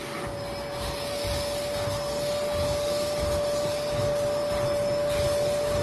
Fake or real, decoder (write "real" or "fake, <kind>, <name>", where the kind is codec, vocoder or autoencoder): real